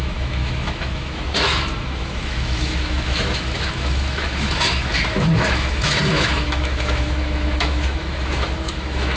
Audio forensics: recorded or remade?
remade